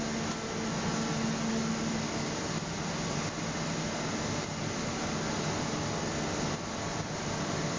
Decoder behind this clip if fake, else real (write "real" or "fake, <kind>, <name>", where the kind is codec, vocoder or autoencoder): real